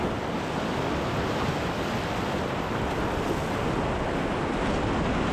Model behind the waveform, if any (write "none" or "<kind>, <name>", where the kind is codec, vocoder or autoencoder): none